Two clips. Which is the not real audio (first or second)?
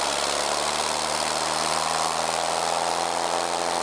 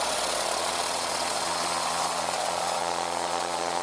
second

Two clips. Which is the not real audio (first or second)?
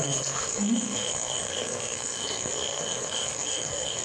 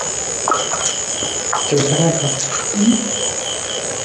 first